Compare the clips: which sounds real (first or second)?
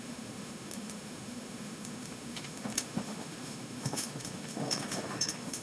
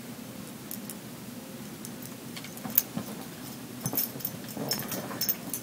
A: second